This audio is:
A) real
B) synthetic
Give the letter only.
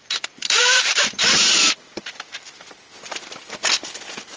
B